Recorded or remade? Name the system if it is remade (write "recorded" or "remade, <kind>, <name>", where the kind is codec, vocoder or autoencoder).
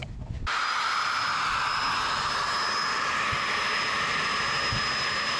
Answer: remade, vocoder, BigVGAN v2